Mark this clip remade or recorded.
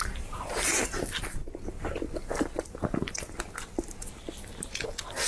recorded